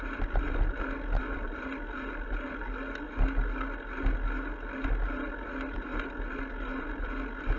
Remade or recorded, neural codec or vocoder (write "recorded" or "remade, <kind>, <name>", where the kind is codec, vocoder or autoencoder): recorded